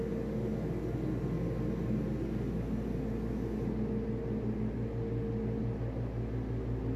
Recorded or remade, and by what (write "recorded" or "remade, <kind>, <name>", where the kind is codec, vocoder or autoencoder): recorded